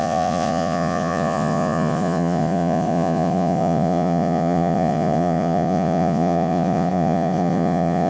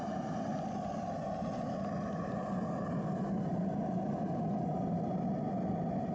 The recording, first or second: second